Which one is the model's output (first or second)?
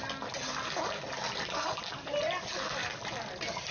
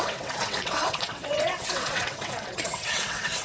second